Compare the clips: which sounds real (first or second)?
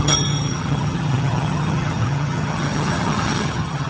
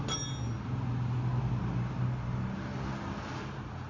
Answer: second